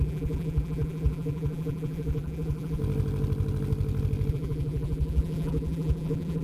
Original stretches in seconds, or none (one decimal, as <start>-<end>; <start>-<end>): 2.8-4.3